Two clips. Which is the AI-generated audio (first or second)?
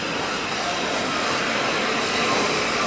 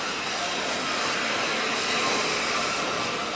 first